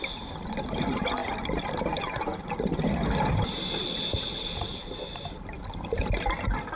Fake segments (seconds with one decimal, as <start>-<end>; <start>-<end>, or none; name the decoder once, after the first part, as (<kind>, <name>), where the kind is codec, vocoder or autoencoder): none

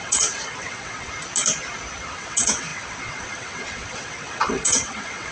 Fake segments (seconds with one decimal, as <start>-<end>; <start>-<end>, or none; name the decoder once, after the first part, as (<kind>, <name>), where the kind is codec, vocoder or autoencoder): 0.0-1.1 (vocoder, WaveNeXt); 2.1-5.3

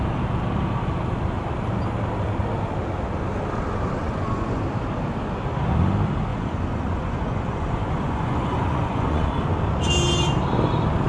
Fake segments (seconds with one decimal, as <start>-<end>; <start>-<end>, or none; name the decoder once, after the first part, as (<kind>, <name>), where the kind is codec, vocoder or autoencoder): 4.0-4.6 (vocoder, Vocos); 6.3-9.3

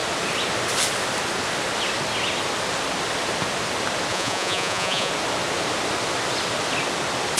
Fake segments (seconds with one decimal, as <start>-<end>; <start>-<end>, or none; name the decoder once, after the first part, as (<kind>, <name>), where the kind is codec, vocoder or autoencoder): 4.1-5.1 (vocoder, Vocos)

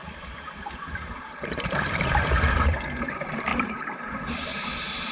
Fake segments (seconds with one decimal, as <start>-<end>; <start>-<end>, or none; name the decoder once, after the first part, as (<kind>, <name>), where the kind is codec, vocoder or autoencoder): 0.0-3.1 (vocoder, BigVGAN v2); 3.5-5.1

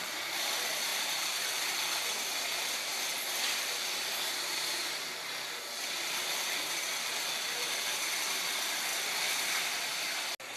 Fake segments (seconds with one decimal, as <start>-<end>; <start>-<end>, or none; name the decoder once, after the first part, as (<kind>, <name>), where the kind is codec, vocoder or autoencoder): 2.9-5.3 (vocoder, BigVGAN v2); 8.9-9.4